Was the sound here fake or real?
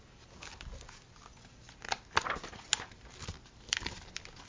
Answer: real